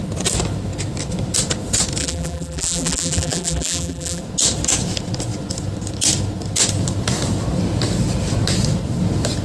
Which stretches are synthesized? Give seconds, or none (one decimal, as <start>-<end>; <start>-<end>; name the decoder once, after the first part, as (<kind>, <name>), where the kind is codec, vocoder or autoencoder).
2.0-4.2 (vocoder, BigVGAN v2)